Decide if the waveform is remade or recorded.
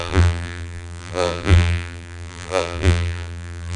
remade